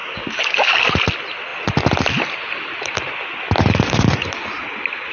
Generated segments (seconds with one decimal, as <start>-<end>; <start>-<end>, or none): 0.0-0.9